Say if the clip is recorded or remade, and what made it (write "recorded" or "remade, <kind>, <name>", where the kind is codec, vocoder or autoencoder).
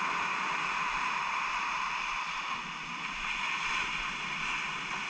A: recorded